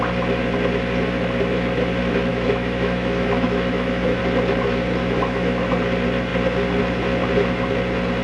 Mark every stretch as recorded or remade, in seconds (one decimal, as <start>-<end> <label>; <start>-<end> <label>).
0.0-2.3 recorded; 2.3-4.2 remade; 4.2-5.0 recorded; 5.0-5.7 remade; 5.7-8.2 recorded